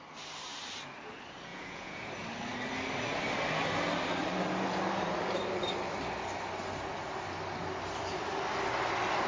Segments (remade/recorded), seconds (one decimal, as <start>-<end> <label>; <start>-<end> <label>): 0.0-1.5 recorded; 1.5-2.1 remade; 2.1-9.3 recorded